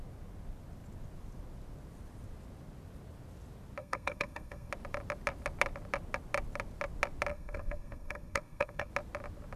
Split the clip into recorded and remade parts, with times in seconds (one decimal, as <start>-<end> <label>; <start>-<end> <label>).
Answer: 0.0-3.8 recorded; 3.8-4.7 remade; 4.7-7.3 recorded; 7.3-8.9 remade; 8.9-9.6 recorded